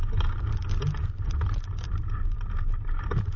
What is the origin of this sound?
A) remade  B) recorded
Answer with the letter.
B